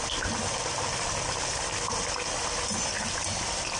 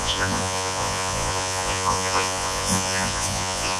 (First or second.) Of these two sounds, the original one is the first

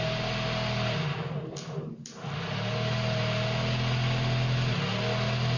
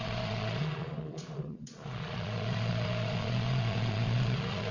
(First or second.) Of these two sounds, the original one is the first